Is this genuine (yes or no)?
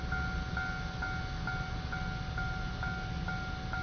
yes